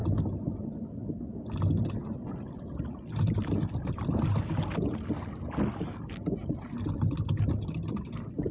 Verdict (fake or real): real